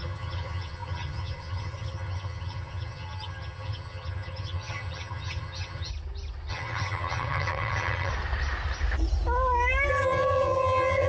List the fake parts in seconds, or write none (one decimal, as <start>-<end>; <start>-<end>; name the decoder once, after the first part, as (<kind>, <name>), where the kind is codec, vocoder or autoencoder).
0.0-5.9 (vocoder, HiFi-GAN); 6.5-8.1; 9.9-11.1